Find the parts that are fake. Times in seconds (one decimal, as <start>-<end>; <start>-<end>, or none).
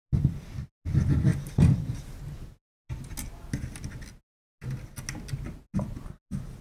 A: 1.3-2.2